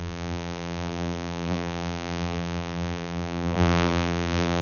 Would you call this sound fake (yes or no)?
yes